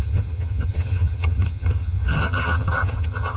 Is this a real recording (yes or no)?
no